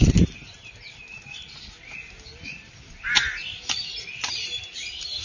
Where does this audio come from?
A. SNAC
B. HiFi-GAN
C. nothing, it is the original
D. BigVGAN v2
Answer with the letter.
C